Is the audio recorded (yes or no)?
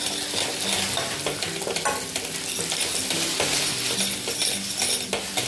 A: yes